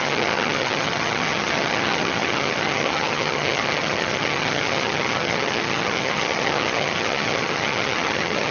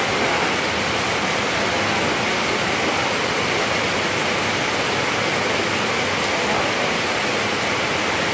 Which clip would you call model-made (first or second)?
first